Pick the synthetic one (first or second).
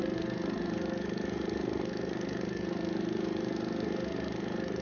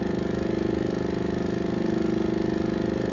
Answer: first